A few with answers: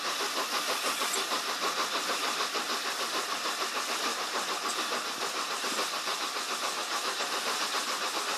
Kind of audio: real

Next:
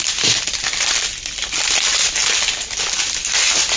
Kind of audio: real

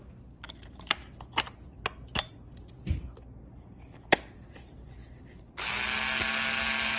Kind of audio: real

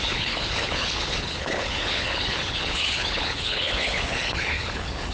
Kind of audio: fake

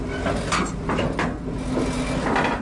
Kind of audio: real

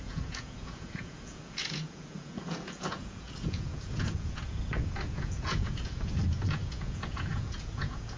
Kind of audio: fake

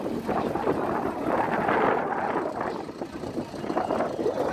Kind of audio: real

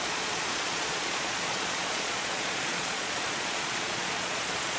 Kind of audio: fake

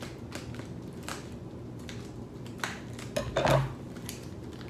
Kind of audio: real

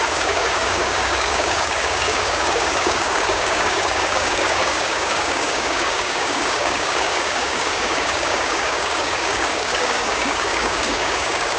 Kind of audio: fake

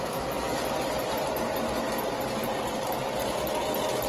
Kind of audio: real